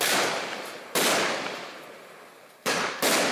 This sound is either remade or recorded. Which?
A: remade